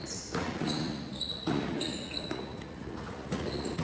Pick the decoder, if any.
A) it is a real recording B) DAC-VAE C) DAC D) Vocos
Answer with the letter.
D